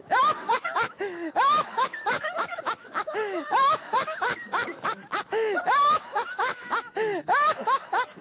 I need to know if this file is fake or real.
fake